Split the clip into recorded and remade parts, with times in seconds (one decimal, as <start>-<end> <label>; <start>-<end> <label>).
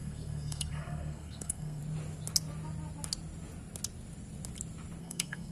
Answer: 0.0-1.8 remade; 1.8-5.0 recorded; 5.0-5.5 remade